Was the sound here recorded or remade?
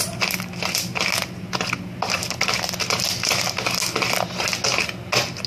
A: recorded